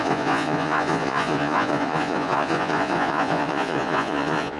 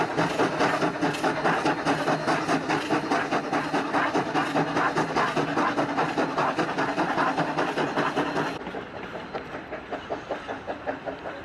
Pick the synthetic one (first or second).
first